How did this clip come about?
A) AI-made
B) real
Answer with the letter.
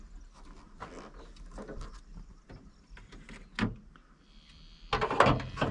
B